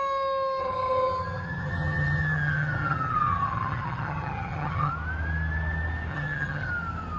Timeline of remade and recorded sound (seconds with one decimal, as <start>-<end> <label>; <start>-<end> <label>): 0.0-0.6 recorded; 0.6-4.9 remade; 4.9-6.1 recorded; 6.1-6.7 remade; 6.7-7.2 recorded